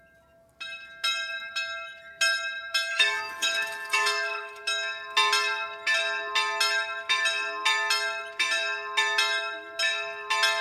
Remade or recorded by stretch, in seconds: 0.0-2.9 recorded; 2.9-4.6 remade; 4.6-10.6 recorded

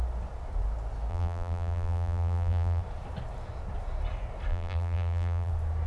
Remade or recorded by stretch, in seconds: 0.0-1.1 recorded; 1.1-2.8 remade; 2.8-4.5 recorded; 4.5-5.5 remade; 5.5-5.9 recorded

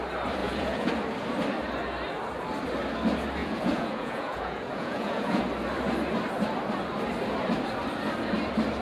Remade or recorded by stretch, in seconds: 0.0-0.4 recorded; 0.4-0.9 remade; 0.9-3.4 recorded; 3.4-5.4 remade; 5.4-8.8 recorded

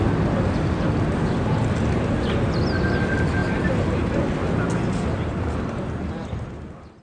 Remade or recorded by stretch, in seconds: 0.0-7.0 recorded

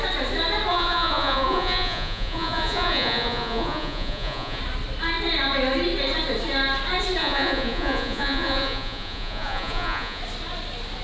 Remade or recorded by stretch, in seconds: 0.0-0.7 recorded; 0.7-4.6 remade; 4.6-7.2 recorded; 7.2-10.2 remade; 10.2-11.0 recorded

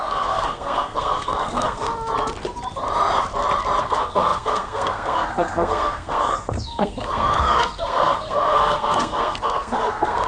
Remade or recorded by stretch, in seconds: 0.0-1.9 remade; 1.9-3.8 recorded; 3.8-10.3 remade

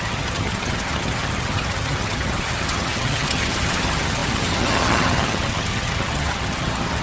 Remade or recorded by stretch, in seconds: 0.0-7.0 remade

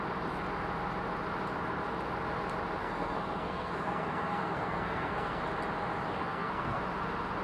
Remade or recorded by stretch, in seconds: 0.0-2.8 recorded; 2.8-5.4 remade; 5.4-6.2 recorded; 6.2-6.8 remade; 6.8-7.4 recorded